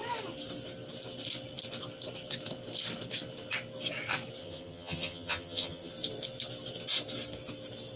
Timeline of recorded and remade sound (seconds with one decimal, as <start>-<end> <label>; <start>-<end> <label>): 0.0-4.4 recorded; 4.4-5.9 remade; 5.9-8.0 recorded